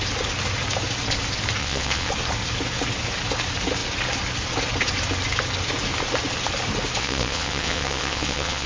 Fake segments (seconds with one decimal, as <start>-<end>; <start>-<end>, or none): 1.6-2.1; 7.0-8.7